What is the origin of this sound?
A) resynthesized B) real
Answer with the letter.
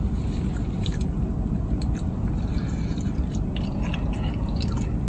B